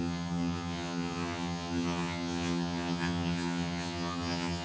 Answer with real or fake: fake